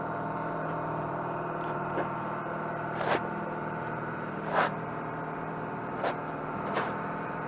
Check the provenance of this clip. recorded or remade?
remade